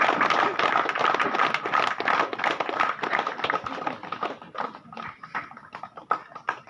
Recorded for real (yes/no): yes